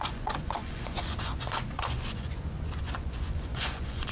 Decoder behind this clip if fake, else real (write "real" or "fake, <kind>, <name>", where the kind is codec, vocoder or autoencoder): fake, vocoder, Vocos